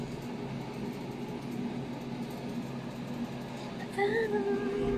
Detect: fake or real real